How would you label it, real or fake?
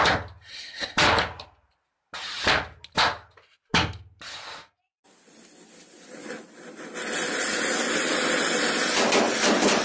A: real